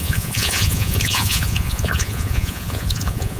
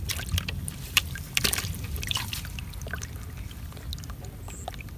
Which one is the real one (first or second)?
second